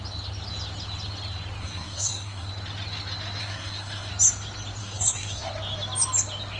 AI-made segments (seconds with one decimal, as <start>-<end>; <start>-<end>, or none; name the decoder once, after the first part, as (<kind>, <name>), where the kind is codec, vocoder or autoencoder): 1.6-2.5 (codec, SNAC); 3.4-4.1; 4.8-5.5